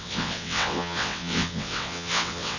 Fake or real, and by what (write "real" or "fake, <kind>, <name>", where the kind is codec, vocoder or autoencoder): fake, vocoder, WaveNeXt